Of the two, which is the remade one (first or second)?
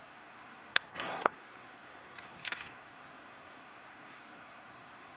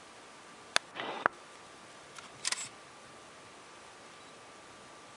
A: first